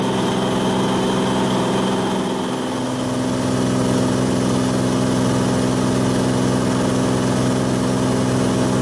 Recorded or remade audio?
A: recorded